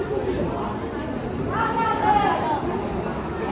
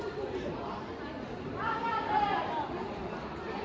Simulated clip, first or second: second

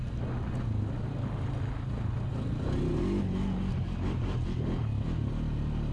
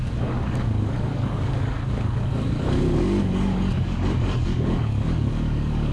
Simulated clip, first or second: second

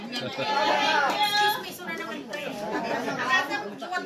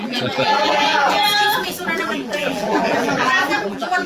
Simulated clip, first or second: second